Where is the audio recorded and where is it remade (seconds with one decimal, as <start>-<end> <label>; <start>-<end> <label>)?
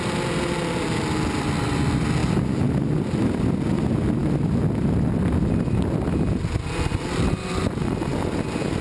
0.0-8.8 recorded